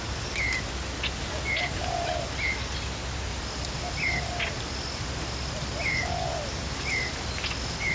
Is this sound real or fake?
real